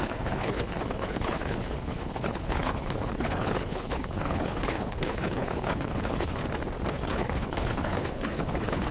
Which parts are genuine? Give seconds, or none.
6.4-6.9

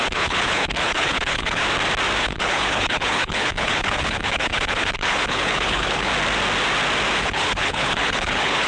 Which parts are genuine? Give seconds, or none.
1.6-2.2; 6.1-7.2